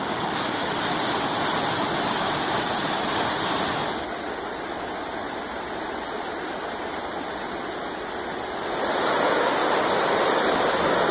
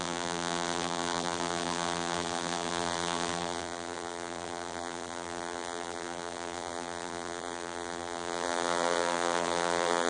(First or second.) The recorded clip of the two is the first